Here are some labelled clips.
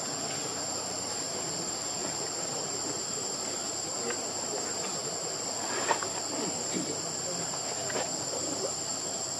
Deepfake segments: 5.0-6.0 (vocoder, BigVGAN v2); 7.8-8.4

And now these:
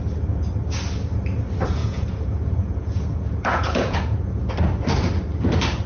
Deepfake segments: 1.8-4.5 (vocoder, Vocos)

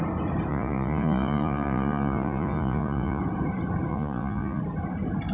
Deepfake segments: 0.5-3.2 (vocoder, Vocos); 3.9-4.6

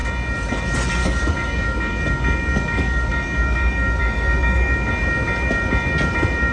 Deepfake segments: 1.0-4.9 (codec, DAC)

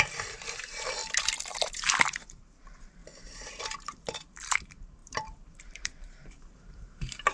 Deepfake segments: 0.0-1.0 (vocoder, BigVGAN v2); 1.5-3.0; 3.6-7.3